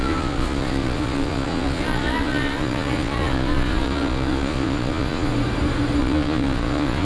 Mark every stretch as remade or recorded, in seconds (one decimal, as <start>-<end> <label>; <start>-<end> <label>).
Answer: 0.0-5.3 remade; 5.3-6.0 recorded; 6.0-7.0 remade